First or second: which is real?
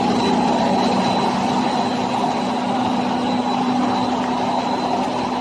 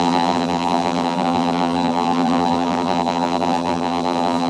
first